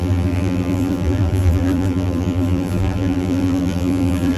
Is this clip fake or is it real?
fake